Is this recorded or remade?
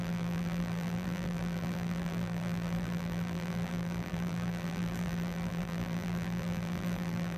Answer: remade